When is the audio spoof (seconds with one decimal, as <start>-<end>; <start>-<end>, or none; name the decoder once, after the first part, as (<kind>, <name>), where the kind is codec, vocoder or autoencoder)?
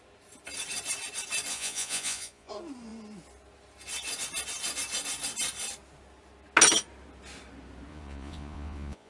1.5-2.5 (vocoder, Vocos); 7.9-9.1